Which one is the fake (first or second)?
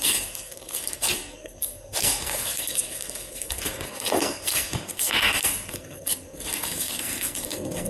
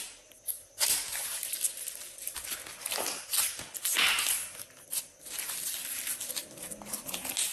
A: first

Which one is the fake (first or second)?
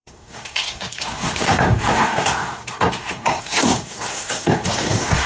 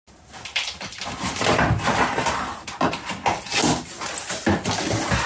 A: first